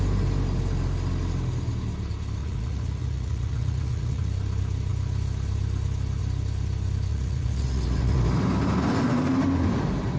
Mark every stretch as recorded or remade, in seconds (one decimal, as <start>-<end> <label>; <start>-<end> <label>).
0.0-2.4 recorded; 2.4-4.3 remade; 4.3-7.1 recorded; 7.1-8.2 remade; 8.2-10.2 recorded

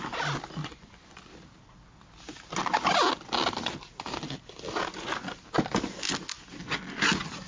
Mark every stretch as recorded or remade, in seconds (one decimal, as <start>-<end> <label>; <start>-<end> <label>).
0.0-0.6 recorded; 0.6-1.3 remade; 1.3-7.5 recorded

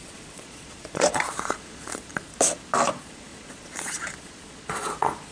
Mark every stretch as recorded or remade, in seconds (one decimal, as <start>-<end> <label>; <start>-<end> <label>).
0.0-2.3 remade; 2.3-2.9 recorded; 2.9-5.3 remade

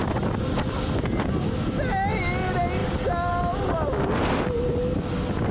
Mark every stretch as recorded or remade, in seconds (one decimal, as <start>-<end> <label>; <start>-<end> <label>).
0.0-5.5 recorded

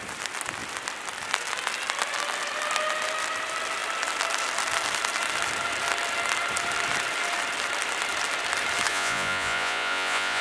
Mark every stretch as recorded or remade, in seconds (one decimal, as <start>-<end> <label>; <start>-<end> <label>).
0.0-8.9 recorded; 8.9-10.4 remade